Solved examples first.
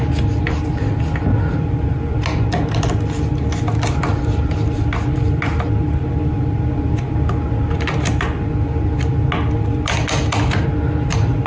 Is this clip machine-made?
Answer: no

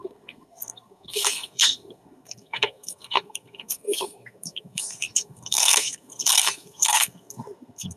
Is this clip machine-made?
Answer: yes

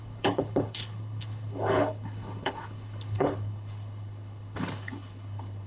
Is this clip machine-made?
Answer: yes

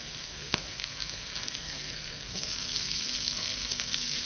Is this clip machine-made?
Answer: yes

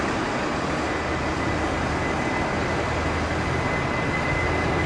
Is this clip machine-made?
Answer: no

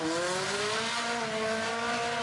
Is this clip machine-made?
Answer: no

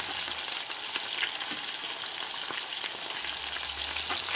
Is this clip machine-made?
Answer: no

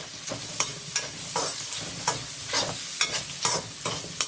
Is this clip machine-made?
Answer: no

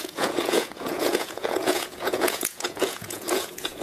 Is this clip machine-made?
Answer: yes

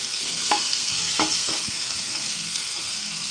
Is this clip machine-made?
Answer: yes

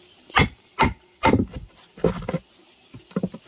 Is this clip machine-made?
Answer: no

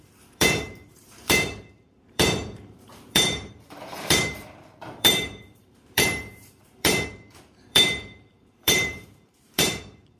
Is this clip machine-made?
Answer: yes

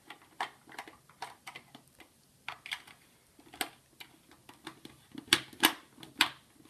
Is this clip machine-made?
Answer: no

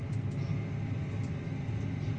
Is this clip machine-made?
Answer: no